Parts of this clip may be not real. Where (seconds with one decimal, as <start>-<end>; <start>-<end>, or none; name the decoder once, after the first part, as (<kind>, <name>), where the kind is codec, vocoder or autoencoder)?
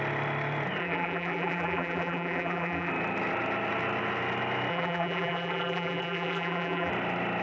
0.8-2.9 (vocoder, BigVGAN v2); 4.7-6.9